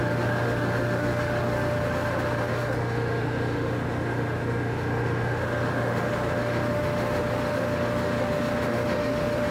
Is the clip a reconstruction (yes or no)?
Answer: yes